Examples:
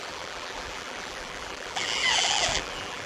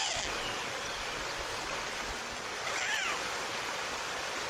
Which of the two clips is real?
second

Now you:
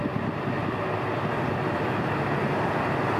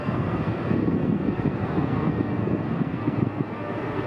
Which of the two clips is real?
first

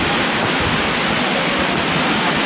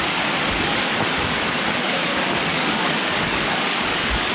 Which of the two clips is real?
first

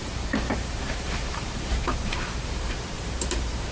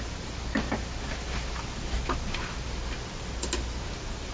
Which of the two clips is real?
second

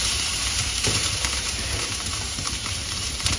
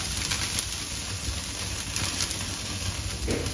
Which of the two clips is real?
second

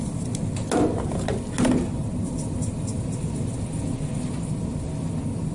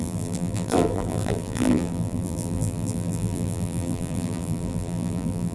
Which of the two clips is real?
first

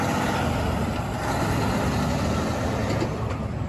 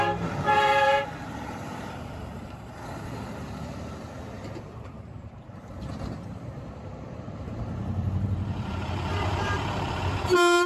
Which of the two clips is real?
first